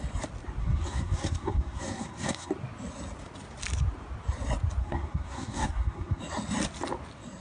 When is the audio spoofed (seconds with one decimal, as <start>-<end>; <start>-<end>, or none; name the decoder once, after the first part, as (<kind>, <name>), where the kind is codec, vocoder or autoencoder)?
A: 0.6-2.5 (codec, SNAC); 4.8-6.2